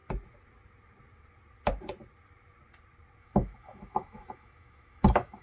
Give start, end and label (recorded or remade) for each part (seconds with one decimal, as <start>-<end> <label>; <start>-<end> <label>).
0.0-3.2 recorded; 3.2-5.4 remade